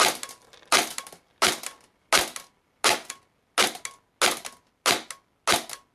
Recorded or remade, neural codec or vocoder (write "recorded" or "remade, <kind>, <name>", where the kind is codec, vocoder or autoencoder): recorded